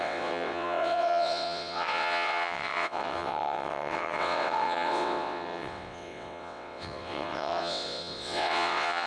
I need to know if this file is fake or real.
fake